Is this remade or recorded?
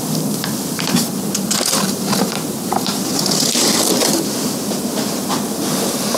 remade